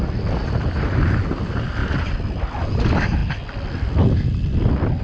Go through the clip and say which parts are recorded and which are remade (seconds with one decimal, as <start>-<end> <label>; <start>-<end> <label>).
0.0-5.0 recorded